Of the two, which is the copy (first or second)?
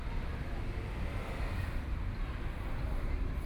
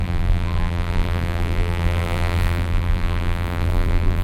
second